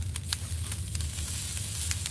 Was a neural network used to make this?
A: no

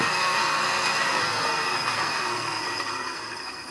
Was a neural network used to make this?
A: yes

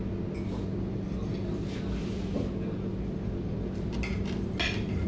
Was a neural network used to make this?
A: no